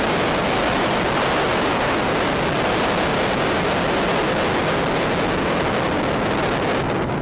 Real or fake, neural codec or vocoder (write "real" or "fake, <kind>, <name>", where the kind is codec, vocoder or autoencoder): real